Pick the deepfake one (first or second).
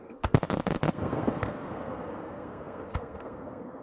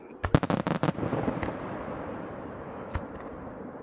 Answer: first